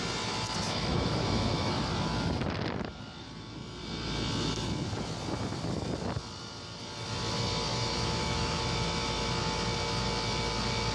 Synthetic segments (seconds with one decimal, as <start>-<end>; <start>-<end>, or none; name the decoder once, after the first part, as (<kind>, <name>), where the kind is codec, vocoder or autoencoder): 0.9-1.7 (autoencoder, DAC-VAE); 7.7-8.6